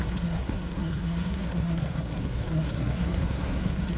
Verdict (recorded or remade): remade